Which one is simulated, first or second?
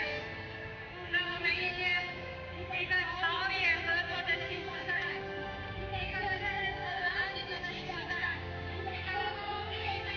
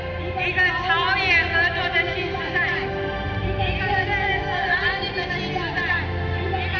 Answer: first